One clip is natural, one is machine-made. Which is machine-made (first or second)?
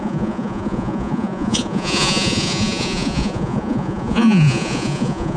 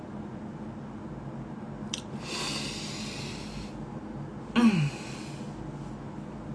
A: first